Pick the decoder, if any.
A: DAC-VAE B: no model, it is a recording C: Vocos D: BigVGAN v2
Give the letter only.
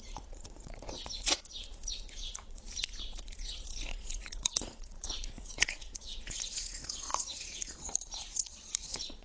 C